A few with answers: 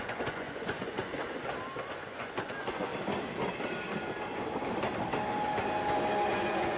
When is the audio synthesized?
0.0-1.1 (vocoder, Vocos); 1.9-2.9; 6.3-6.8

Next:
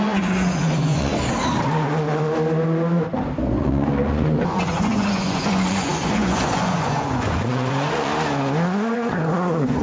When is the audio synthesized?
0.0-1.1 (vocoder, Vocos); 3.6-8.1; 8.9-9.8

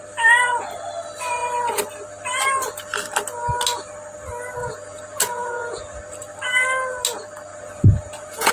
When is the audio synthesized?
4.6-6.0 (vocoder, Vocos); 7.5-8.5

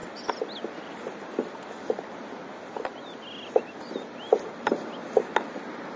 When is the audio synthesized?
none

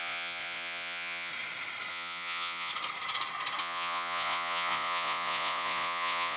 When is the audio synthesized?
0.0-1.3 (vocoder, Vocos); 1.9-2.7; 3.6-6.4

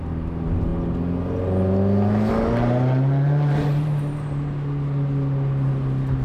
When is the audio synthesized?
none

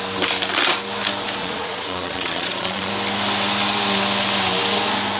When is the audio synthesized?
1.4-2.9 (vocoder, Vocos)

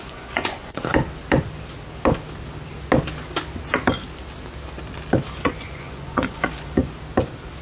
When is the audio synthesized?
0.0-0.9 (vocoder, Vocos); 5.4-6.8